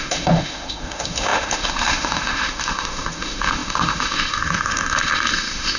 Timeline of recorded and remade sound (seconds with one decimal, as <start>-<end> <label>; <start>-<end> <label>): 0.0-5.8 remade